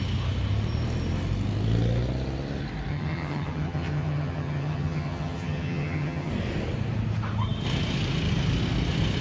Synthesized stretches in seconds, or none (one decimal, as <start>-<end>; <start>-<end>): 2.9-6.3